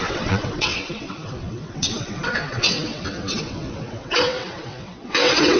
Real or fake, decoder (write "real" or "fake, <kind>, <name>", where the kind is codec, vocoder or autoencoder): fake, vocoder, WaveNeXt